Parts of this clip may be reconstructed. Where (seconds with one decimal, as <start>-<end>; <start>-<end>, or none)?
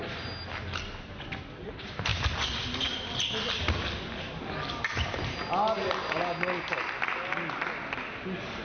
none